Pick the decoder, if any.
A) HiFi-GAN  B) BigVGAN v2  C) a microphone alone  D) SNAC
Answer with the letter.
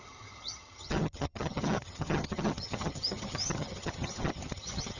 A